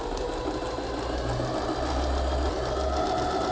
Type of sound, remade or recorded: recorded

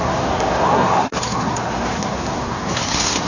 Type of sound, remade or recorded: remade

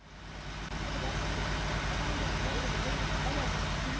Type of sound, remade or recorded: recorded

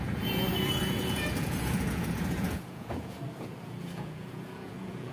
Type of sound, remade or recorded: remade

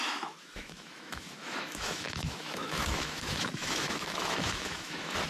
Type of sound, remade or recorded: remade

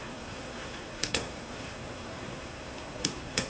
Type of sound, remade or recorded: remade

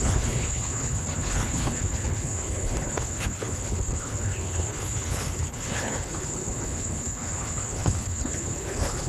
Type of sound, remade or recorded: remade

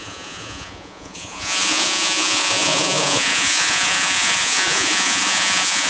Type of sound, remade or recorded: remade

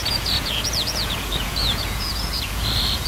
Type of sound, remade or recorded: remade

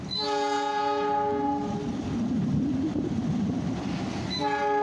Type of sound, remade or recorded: recorded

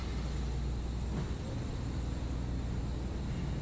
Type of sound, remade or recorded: recorded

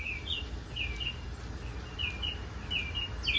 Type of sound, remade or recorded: recorded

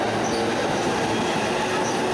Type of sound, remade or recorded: recorded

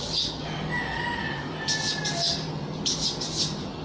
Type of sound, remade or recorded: recorded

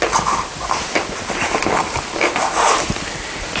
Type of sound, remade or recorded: recorded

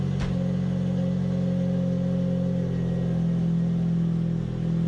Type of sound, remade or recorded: recorded